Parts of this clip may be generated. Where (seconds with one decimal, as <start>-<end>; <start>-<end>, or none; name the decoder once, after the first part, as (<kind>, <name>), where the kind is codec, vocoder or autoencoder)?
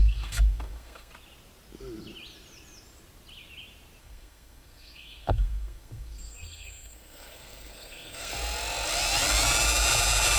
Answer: 0.0-1.1 (codec, SNAC); 4.0-8.3